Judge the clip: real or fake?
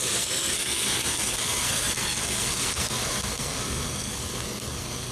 fake